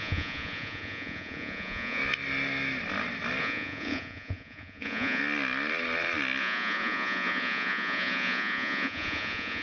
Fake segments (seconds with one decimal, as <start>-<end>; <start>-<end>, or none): 0.0-2.0; 3.4-5.2; 6.4-9.6